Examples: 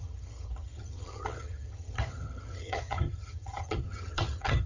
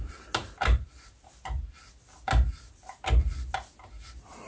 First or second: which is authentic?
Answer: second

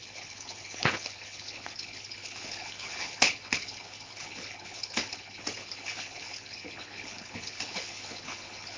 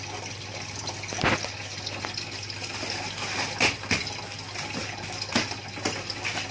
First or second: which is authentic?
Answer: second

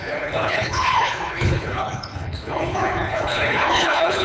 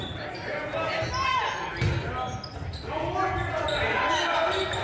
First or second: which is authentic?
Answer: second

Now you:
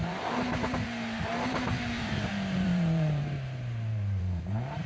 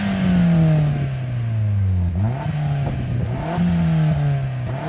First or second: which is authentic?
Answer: second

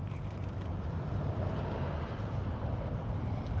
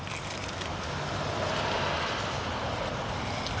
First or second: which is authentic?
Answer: second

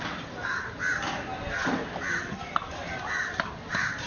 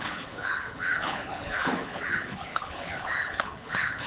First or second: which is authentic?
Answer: first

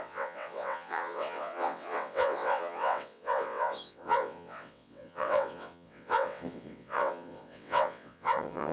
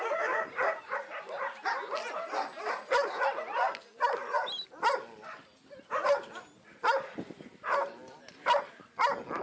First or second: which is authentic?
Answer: second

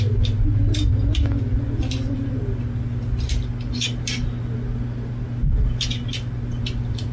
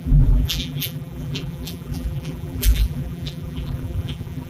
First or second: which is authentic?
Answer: first